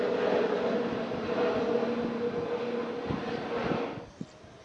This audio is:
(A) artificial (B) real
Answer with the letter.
B